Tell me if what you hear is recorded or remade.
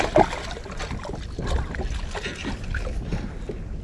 recorded